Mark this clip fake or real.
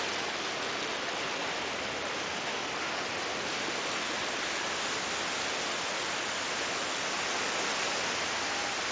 real